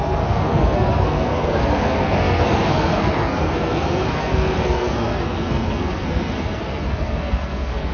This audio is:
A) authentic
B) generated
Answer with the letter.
B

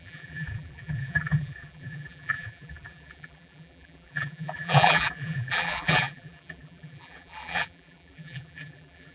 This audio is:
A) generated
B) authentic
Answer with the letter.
A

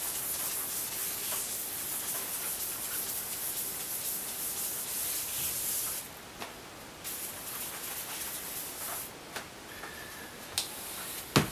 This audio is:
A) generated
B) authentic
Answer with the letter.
B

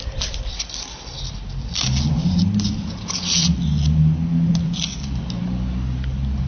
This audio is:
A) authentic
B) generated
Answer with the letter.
A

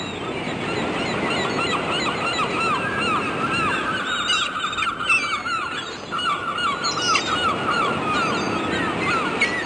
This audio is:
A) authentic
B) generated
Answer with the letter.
A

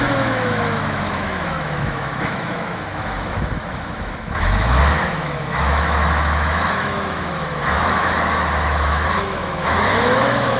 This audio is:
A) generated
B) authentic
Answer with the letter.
A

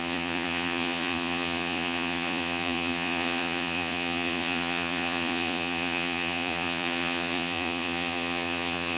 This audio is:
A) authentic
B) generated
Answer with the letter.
B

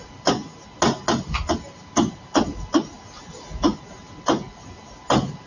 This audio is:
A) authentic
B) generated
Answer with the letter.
A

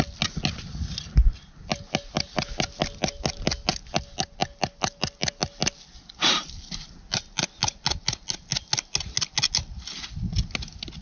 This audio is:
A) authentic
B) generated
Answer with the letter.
A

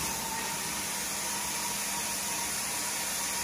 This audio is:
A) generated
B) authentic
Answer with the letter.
A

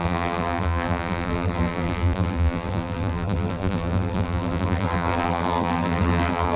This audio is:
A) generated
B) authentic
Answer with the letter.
A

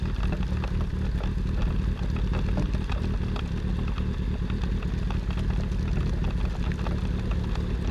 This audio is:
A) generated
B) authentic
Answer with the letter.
B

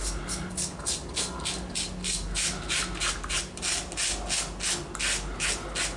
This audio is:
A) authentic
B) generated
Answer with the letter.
A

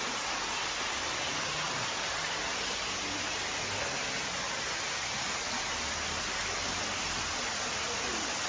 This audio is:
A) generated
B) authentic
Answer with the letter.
B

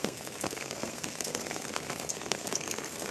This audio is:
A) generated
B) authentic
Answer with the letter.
A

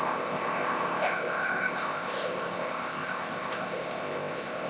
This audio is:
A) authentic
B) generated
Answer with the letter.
B